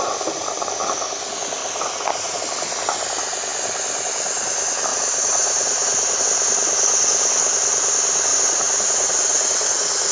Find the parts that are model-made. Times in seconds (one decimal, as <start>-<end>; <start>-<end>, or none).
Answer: 1.6-2.4; 4.9-6.2; 8.3-10.1